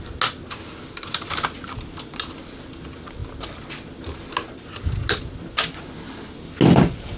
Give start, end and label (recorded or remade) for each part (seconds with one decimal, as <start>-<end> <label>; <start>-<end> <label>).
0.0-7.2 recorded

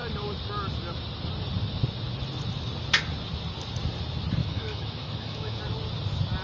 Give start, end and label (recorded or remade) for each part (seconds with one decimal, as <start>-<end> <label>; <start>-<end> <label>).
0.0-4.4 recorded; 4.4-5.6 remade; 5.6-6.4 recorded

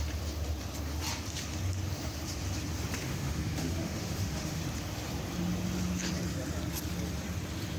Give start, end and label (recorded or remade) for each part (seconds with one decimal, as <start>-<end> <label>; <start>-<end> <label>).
0.0-3.0 recorded; 3.0-4.6 remade; 4.6-7.8 recorded

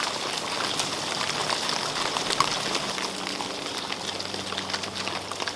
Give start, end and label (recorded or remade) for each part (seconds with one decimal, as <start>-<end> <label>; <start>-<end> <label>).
0.0-5.6 recorded

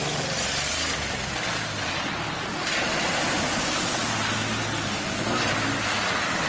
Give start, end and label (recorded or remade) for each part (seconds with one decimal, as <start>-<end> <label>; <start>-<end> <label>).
0.0-6.5 recorded

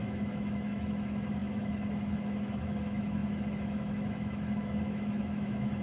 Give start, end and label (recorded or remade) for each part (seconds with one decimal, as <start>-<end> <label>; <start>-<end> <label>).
0.0-5.8 remade

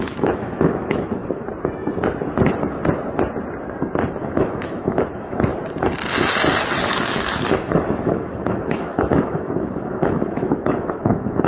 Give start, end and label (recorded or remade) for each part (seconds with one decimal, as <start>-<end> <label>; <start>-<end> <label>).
0.0-1.2 remade; 1.2-4.2 recorded; 4.2-5.5 remade; 5.5-6.8 recorded; 6.8-11.5 remade

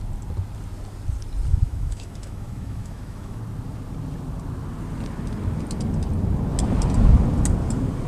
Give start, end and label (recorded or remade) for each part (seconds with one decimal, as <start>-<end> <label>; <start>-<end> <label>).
0.0-1.5 recorded; 1.5-3.4 remade; 3.4-8.1 recorded